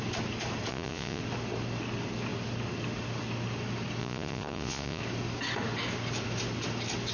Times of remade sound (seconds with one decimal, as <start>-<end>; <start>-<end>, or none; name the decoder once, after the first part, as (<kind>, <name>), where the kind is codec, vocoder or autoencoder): 0.7-1.2 (vocoder, Vocos); 4.0-5.0